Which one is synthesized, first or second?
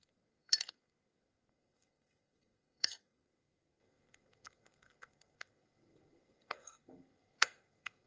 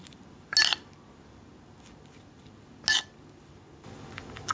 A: first